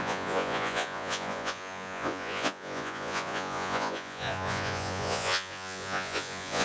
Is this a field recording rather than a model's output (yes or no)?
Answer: no